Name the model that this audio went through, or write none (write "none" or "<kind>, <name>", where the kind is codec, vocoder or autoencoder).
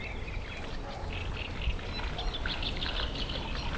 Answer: none